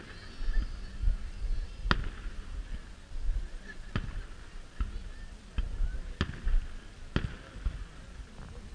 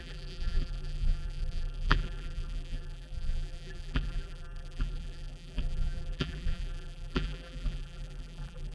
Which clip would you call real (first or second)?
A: first